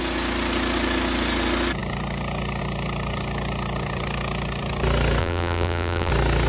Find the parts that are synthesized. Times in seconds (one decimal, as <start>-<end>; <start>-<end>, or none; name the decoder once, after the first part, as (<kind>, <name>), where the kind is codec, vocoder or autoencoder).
5.2-6.1 (vocoder, BigVGAN v2)